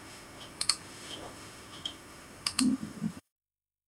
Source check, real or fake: fake